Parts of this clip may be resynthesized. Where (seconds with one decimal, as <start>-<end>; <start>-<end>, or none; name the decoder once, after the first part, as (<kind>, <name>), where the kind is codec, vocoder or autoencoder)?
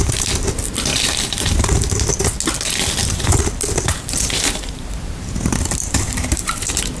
0.9-1.8 (vocoder, BigVGAN v2); 3.0-6.6